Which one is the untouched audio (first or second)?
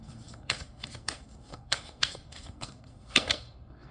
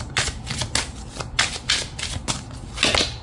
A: second